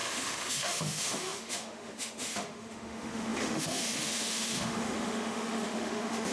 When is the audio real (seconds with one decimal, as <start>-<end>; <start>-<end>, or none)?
none